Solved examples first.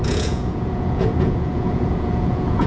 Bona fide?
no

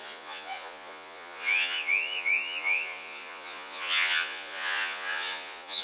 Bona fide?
no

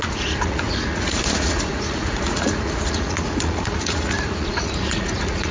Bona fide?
no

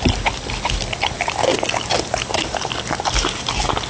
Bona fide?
yes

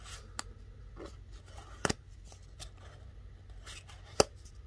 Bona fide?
yes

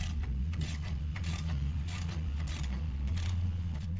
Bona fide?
no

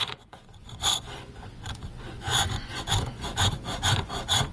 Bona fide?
no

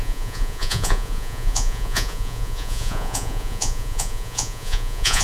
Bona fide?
no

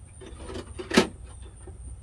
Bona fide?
yes